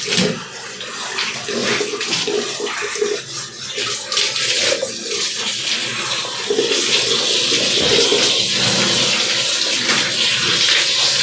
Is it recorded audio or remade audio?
recorded